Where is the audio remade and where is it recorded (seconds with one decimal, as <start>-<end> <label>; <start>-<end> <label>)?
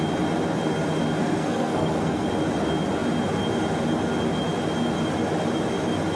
0.0-1.2 recorded; 1.2-2.3 remade; 2.3-6.2 recorded